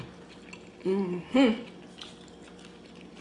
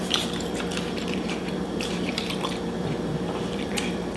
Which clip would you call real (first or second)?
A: first